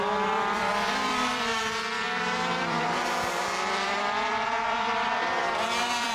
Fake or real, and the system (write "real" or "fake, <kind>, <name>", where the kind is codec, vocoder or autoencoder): fake, vocoder, BigVGAN v2